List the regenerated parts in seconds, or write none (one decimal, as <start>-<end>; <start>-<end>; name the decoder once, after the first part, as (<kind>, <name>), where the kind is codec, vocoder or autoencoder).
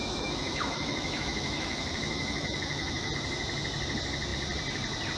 0.0-3.1 (autoencoder, DAC-VAE)